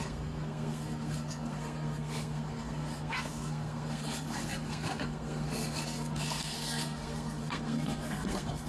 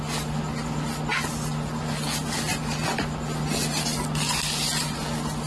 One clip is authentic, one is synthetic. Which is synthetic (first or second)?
first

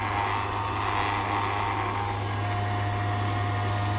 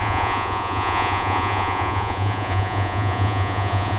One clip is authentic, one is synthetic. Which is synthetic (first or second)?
second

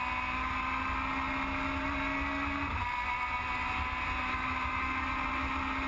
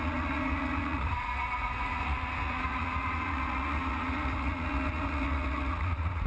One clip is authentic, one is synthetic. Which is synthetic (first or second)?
second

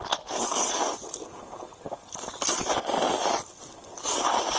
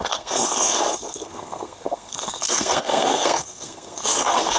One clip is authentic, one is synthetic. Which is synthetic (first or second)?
second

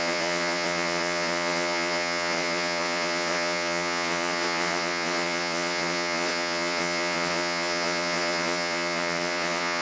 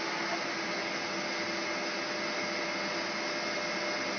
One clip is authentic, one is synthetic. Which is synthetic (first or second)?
first